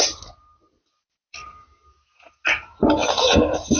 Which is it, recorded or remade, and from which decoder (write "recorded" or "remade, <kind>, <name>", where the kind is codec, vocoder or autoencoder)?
recorded